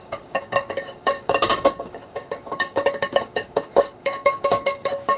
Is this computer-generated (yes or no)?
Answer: yes